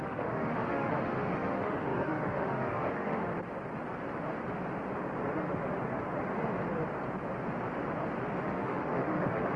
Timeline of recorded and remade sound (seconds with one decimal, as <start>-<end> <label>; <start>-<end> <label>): 0.0-3.3 remade; 3.3-8.4 recorded; 8.4-9.6 remade